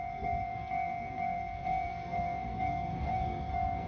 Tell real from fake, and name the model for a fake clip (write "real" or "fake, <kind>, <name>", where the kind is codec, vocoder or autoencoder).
fake, codec, SNAC